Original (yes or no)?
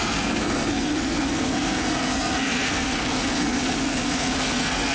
no